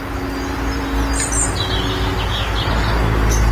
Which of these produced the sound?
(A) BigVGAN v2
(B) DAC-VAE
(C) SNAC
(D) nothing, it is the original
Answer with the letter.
D